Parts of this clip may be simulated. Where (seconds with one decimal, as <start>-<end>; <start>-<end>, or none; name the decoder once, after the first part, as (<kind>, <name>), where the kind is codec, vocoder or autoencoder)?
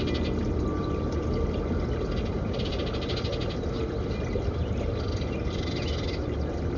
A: none